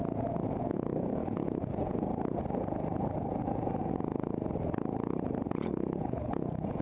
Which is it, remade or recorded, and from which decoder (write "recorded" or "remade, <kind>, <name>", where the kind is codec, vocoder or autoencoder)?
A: remade, vocoder, Vocos